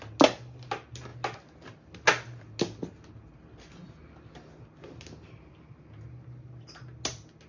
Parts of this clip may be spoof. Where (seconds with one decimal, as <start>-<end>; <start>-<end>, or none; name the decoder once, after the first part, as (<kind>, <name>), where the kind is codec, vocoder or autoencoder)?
none